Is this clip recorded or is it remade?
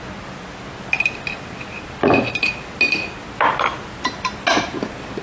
recorded